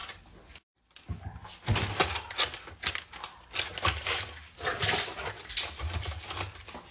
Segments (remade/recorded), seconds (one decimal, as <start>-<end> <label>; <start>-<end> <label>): 0.0-6.9 recorded